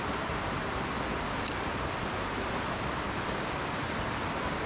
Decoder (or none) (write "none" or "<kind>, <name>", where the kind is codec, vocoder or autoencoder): none